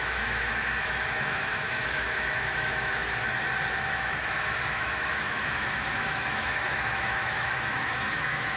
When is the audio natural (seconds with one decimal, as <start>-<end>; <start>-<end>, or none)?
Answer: 3.0-3.7